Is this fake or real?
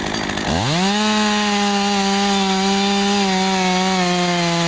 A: real